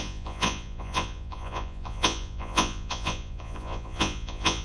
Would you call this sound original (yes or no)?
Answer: no